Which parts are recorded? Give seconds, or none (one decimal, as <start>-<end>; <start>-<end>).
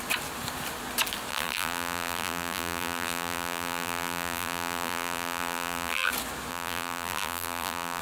0.0-1.3; 6.1-6.5